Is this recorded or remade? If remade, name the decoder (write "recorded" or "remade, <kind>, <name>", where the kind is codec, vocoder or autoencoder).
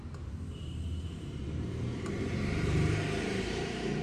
remade, vocoder, BigVGAN v2